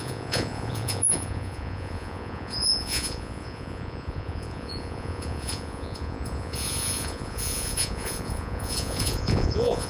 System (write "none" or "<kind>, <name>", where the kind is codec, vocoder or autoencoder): vocoder, Vocos